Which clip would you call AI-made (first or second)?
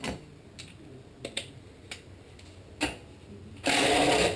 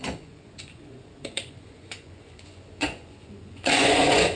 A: second